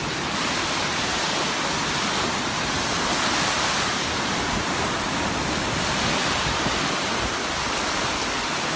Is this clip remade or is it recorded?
recorded